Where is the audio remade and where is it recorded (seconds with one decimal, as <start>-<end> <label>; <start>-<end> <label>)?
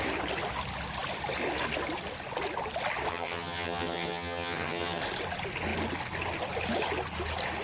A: 0.0-3.1 recorded; 3.1-5.0 remade; 5.0-7.6 recorded